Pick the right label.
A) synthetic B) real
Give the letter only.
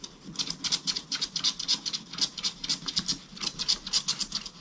B